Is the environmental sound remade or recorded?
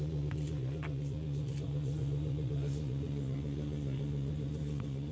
remade